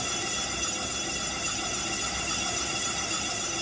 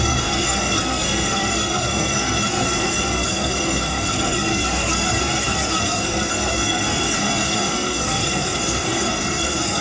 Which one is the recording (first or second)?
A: first